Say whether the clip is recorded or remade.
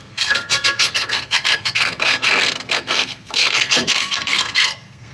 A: remade